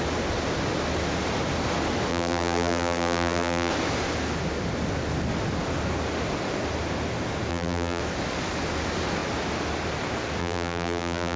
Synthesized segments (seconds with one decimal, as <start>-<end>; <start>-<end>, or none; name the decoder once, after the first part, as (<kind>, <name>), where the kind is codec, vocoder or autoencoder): 2.1-3.7 (vocoder, BigVGAN v2); 7.5-8.0; 10.4-11.4